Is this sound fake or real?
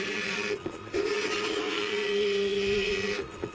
fake